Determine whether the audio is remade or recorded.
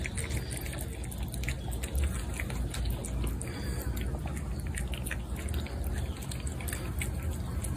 recorded